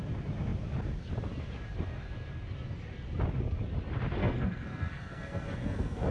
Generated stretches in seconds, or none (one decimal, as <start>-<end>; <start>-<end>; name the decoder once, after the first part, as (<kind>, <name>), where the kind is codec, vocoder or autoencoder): 4.2-6.1 (codec, SNAC)